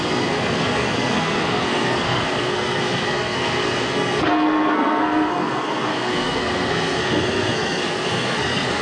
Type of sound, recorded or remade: remade